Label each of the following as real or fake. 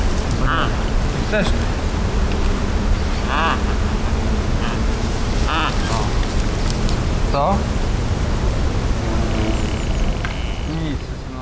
real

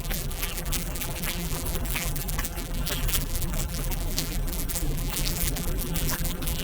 fake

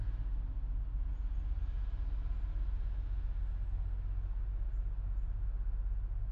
real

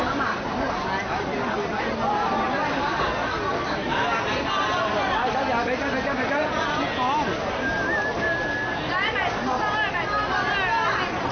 real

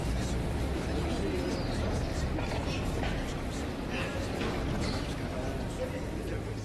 real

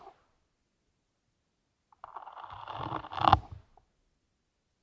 real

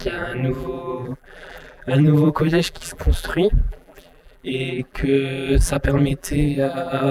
fake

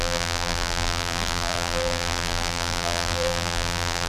fake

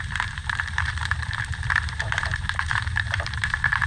fake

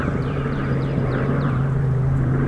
fake